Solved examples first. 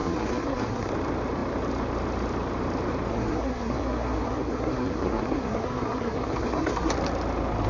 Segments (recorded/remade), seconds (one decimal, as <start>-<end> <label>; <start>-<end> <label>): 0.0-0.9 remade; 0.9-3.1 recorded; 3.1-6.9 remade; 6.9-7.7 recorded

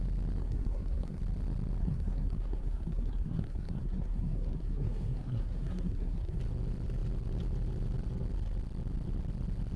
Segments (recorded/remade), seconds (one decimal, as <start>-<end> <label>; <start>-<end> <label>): 0.0-0.4 recorded; 0.4-1.2 remade; 1.2-1.8 recorded; 1.8-6.4 remade; 6.4-9.8 recorded

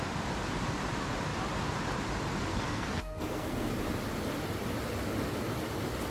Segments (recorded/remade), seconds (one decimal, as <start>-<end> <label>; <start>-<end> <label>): 0.0-2.5 recorded; 2.5-3.7 remade; 3.7-6.1 recorded

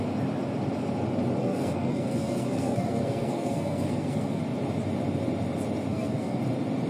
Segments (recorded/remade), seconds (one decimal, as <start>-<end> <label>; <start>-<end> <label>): 0.0-1.4 recorded; 1.4-4.4 remade; 4.4-5.9 recorded; 5.9-6.4 remade; 6.4-6.9 recorded

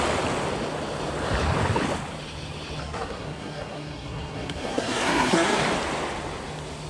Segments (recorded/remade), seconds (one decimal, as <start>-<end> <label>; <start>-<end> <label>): 0.0-2.8 recorded; 2.8-5.6 remade; 5.6-6.9 recorded

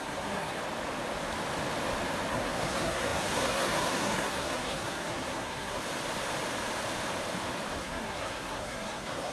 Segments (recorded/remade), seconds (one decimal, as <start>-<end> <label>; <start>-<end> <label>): 0.0-0.6 remade; 0.6-2.3 recorded; 2.3-5.8 remade; 5.8-7.8 recorded; 7.8-9.3 remade